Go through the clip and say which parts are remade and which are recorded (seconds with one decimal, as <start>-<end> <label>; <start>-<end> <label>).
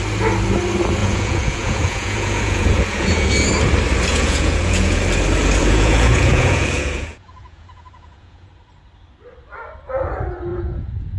0.0-1.0 recorded; 1.0-3.3 remade; 3.3-4.1 recorded; 4.1-5.0 remade; 5.0-5.6 recorded; 5.6-8.5 remade; 8.5-10.5 recorded; 10.5-11.2 remade